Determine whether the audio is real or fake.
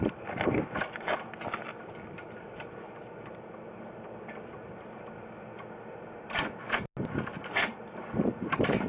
real